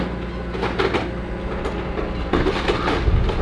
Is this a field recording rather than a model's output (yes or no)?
yes